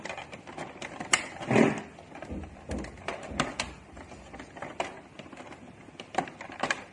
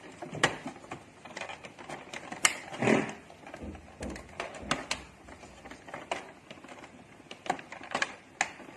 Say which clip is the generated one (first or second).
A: first